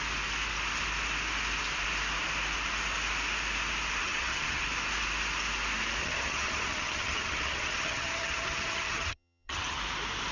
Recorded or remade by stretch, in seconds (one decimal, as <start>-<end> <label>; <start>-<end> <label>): 0.0-4.0 recorded; 4.0-4.6 remade; 4.6-6.0 recorded; 6.0-9.8 remade; 9.8-10.3 recorded